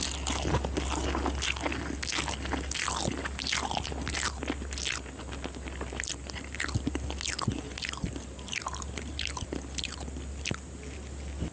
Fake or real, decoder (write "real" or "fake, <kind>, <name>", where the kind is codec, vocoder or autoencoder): real